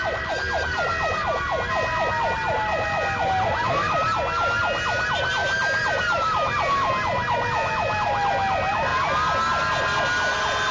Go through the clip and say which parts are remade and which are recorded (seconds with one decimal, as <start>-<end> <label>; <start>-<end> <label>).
0.0-5.4 recorded; 5.4-6.9 remade; 6.9-10.7 recorded